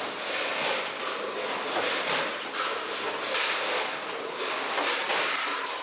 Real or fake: real